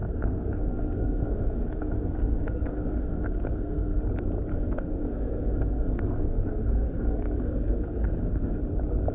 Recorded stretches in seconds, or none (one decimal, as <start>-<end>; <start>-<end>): 4.0-4.5; 8.6-9.1

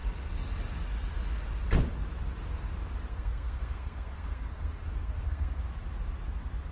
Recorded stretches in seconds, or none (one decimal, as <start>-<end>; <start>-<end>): 0.0-3.1; 5.6-6.7

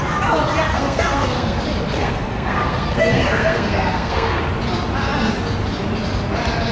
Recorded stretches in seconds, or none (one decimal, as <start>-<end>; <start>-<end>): 0.0-0.7; 1.6-2.0; 4.4-6.7

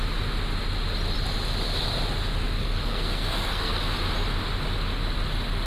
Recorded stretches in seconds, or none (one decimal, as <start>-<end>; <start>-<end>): 0.0-2.6; 3.8-5.7

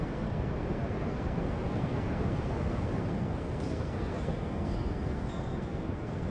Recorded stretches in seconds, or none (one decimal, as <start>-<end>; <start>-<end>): none